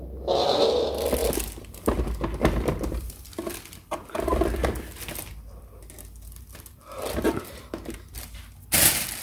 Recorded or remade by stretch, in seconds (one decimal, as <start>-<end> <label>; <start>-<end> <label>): 0.0-9.2 recorded